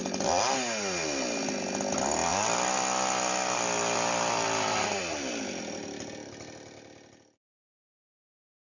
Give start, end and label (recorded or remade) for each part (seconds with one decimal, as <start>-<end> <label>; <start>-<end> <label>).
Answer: 0.0-8.7 recorded

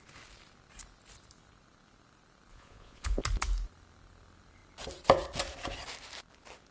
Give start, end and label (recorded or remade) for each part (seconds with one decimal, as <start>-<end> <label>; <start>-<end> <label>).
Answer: 0.0-2.5 recorded; 2.5-3.2 remade; 3.2-6.7 recorded

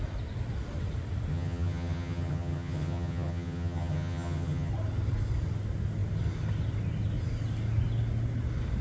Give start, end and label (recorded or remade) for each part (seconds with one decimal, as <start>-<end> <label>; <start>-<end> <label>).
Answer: 0.0-1.3 recorded; 1.3-4.7 remade; 4.7-8.8 recorded

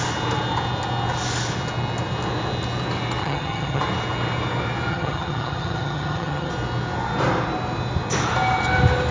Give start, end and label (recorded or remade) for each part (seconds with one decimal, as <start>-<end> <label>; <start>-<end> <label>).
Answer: 0.0-3.2 recorded; 3.2-3.8 remade; 3.8-4.9 recorded; 4.9-6.5 remade; 6.5-9.1 recorded